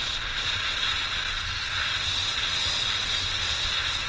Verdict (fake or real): real